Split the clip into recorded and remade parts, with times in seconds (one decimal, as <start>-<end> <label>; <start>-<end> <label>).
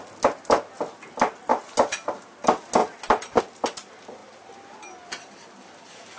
0.0-2.8 recorded; 2.8-3.4 remade; 3.4-6.2 recorded